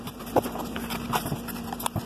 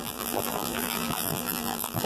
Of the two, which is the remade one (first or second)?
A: second